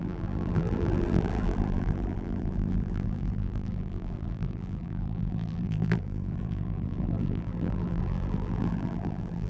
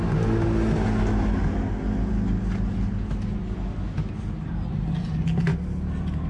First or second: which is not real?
first